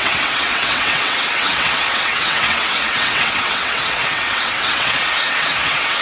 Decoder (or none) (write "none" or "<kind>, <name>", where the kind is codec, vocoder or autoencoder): vocoder, WaveNeXt